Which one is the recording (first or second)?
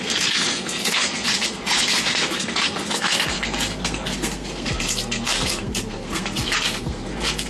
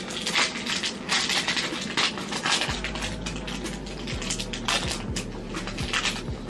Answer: second